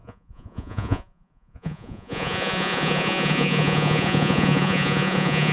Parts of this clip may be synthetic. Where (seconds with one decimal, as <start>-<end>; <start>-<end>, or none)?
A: 0.0-5.5